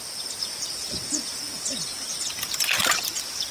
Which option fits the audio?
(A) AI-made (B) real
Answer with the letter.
B